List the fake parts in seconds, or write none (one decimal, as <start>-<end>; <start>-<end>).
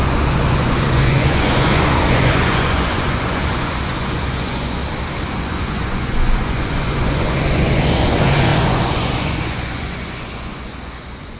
0.0-4.8; 5.3-11.4